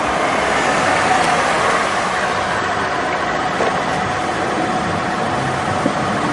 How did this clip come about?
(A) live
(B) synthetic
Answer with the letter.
A